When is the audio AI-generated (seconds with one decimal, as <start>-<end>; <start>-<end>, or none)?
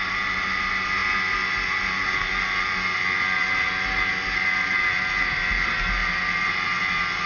none